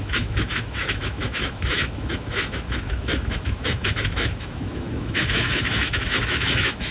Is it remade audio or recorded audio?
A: remade